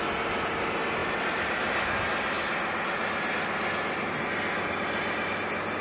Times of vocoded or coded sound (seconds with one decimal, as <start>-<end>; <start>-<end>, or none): none